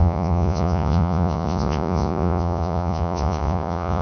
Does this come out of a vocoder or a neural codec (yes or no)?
yes